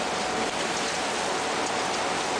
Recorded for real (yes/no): no